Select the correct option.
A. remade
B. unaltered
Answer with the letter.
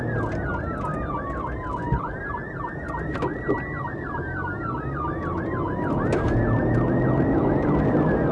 B